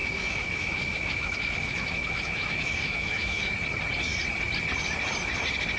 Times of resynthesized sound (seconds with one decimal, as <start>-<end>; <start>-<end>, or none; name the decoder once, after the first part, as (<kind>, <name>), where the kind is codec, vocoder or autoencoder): 0.0-3.5 (autoencoder, DAC-VAE)